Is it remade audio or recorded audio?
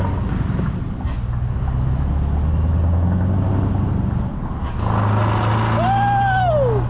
recorded